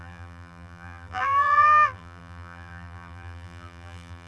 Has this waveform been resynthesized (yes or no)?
yes